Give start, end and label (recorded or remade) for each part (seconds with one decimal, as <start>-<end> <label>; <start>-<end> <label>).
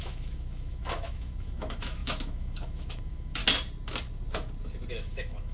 0.0-3.4 remade; 3.4-4.9 recorded; 4.9-5.5 remade